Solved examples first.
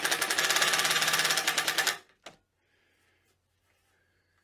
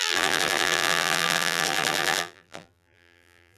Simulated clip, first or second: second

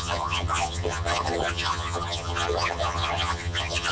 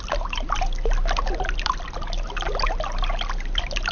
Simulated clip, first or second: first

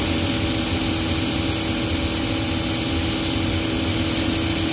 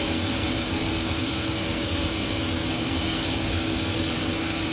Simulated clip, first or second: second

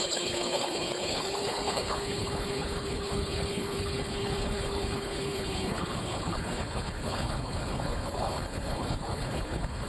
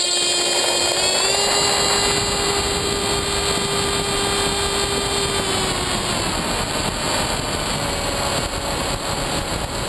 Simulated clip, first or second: first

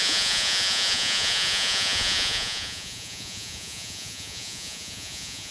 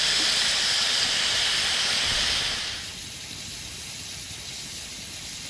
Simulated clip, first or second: first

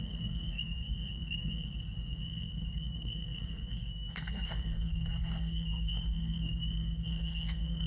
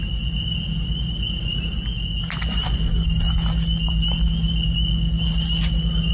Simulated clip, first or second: first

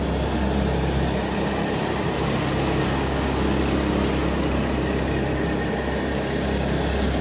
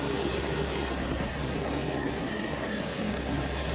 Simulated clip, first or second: second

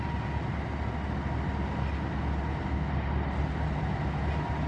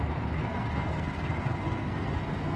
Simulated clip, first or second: second